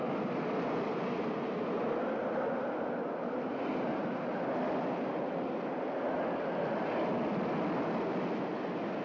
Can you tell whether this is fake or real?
real